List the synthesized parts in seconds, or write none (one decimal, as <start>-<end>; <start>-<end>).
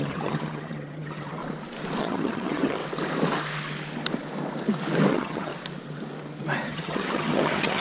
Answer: 0.0-1.4; 2.0-2.8; 5.1-5.5; 6.7-7.8